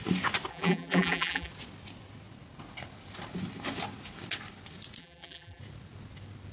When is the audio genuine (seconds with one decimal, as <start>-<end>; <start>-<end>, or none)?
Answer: 0.0-0.5; 1.5-5.0; 5.6-6.5